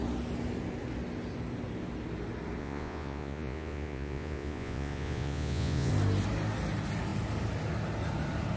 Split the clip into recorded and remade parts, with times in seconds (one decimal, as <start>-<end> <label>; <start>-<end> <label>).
0.0-2.6 recorded; 2.6-5.9 remade; 5.9-8.6 recorded